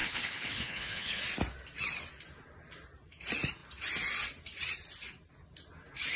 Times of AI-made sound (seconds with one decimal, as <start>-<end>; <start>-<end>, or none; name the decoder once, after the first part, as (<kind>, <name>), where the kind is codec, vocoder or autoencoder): 0.0-1.2 (codec, HILCodec)